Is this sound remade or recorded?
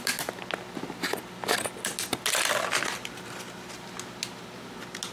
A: recorded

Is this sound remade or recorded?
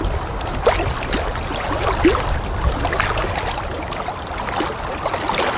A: recorded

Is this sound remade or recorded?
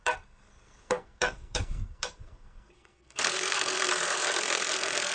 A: remade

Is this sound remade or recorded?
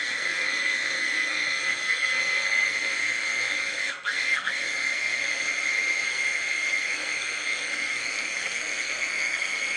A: remade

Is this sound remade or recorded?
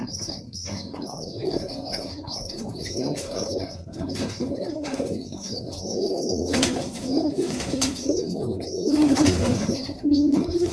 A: remade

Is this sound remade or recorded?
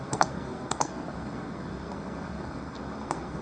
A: remade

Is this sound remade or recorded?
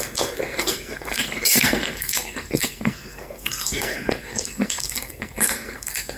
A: remade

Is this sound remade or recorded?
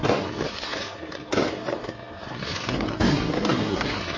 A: remade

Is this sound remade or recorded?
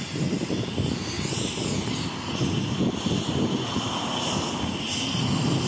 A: recorded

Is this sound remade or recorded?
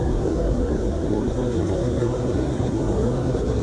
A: remade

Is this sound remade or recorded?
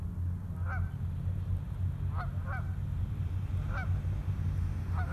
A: recorded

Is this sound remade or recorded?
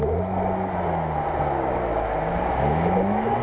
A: recorded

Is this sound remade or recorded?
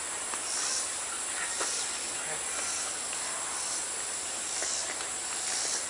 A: recorded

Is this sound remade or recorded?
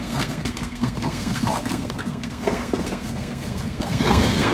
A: remade